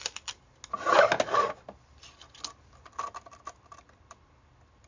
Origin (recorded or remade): recorded